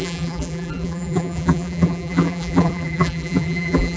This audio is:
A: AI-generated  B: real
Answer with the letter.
A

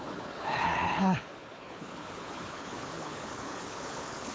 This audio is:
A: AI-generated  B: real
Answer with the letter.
A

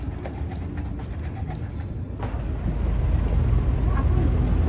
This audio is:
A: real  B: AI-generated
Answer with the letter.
A